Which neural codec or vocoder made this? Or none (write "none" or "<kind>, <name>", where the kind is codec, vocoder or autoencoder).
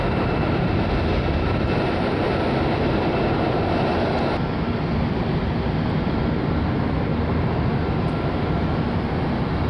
none